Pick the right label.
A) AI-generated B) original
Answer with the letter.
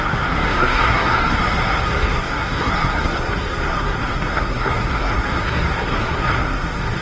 A